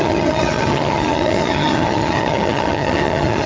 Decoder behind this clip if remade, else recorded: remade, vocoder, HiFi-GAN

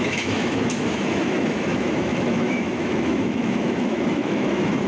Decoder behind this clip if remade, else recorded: remade, autoencoder, DAC-VAE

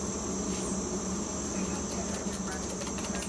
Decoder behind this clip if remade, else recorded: recorded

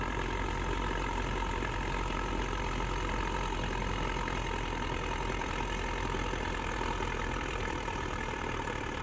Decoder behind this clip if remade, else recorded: remade, vocoder, BigVGAN v2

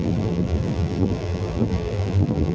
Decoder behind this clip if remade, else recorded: remade, vocoder, BigVGAN v2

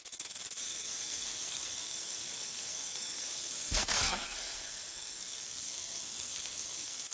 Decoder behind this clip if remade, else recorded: remade, codec, SNAC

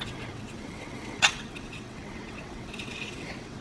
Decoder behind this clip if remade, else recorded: remade, vocoder, WaveNeXt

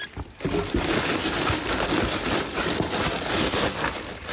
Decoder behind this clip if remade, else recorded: recorded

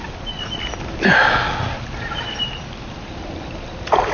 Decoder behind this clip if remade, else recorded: recorded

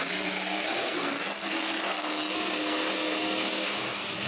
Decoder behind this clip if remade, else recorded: remade, codec, SNAC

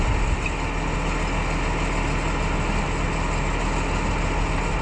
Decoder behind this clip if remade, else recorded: recorded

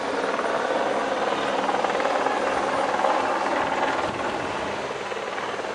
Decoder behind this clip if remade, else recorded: recorded